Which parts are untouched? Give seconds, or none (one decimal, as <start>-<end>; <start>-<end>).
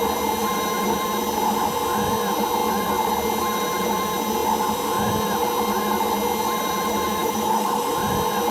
0.0-7.2; 7.9-8.5